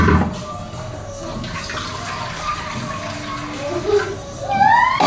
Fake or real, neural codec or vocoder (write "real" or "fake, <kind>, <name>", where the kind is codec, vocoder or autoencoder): real